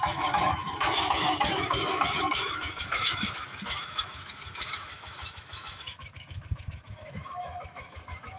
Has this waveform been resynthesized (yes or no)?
yes